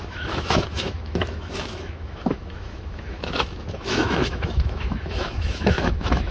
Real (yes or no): no